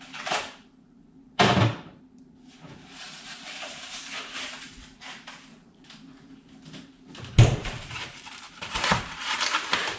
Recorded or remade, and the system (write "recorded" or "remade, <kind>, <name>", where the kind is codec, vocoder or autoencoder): remade, vocoder, BigVGAN v2